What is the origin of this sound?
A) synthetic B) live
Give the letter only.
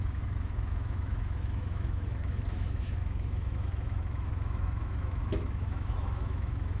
A